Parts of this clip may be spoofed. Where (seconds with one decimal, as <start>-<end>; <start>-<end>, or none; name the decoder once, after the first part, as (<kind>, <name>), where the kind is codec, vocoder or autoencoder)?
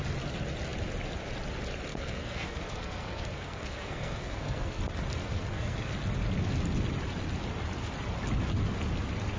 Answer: 1.9-4.8 (codec, SNAC); 5.2-5.9